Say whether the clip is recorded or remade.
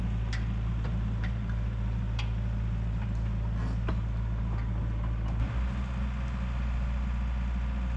recorded